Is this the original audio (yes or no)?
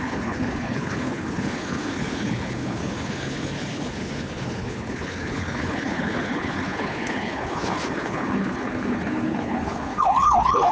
no